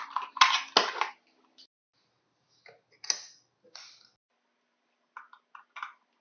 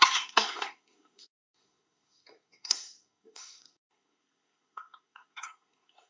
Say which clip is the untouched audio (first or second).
first